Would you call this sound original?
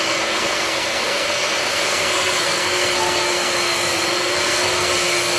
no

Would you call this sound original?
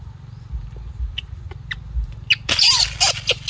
yes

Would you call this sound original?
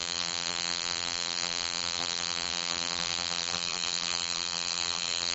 no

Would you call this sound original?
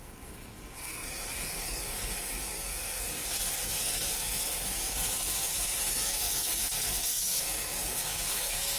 no